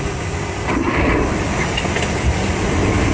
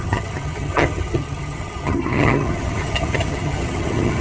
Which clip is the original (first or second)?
first